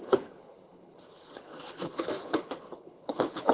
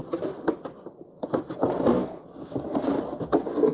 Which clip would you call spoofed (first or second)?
first